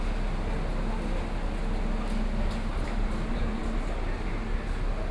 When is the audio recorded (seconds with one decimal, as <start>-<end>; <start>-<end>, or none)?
0.0-2.7; 3.6-5.1